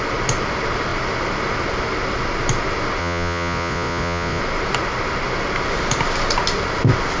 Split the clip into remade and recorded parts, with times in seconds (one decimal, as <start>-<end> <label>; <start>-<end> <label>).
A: 0.0-3.0 recorded; 3.0-4.4 remade; 4.4-7.2 recorded